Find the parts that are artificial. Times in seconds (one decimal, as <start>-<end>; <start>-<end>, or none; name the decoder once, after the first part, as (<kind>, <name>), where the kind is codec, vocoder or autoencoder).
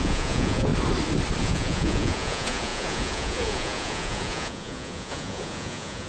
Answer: 0.0-0.7 (vocoder, Vocos); 1.4-6.1